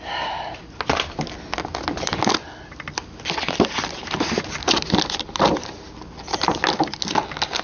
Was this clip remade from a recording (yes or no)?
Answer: no